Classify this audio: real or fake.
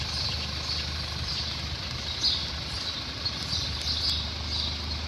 real